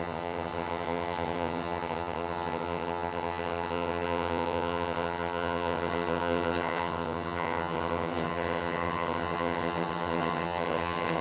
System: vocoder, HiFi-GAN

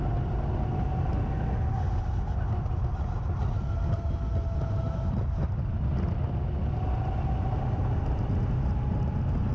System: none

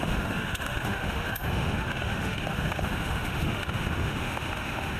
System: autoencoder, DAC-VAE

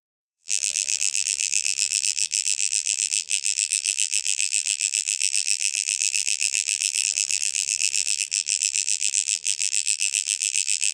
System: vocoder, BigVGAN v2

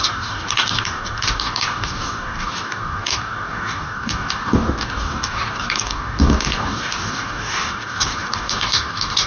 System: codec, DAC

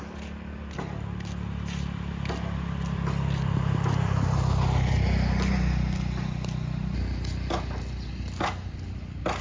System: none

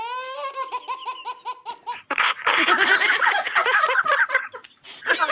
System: none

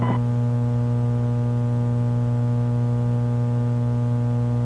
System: none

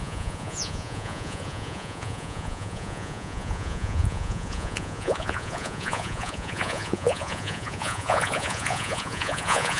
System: vocoder, Vocos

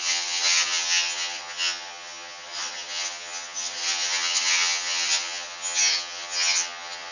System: vocoder, HiFi-GAN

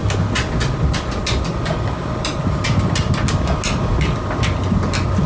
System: none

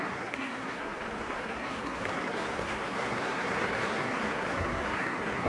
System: codec, SNAC